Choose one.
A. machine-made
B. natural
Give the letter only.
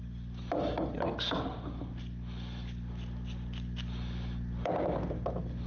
B